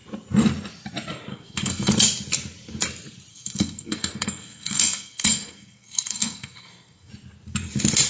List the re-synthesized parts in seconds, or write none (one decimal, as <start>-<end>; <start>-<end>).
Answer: 1.3-1.9; 3.3-7.1